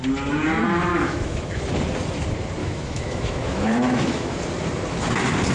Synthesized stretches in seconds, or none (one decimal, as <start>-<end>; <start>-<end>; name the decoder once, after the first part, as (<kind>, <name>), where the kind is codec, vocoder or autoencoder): 0.9-1.6 (autoencoder, DAC-VAE); 2.6-4.4